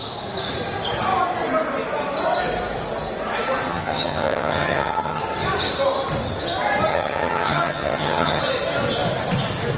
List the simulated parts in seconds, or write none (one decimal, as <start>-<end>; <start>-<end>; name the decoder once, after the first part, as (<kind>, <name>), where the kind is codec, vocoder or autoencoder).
3.7-5.2 (vocoder, HiFi-GAN); 6.9-8.4